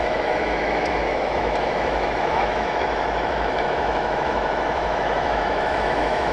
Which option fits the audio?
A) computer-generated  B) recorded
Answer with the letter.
A